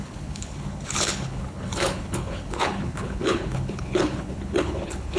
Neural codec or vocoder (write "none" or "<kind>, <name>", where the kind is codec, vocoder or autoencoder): codec, HILCodec